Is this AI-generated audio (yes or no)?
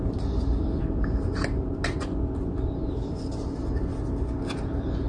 no